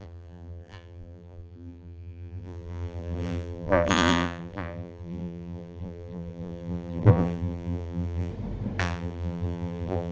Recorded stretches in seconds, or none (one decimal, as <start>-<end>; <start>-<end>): 8.3-8.8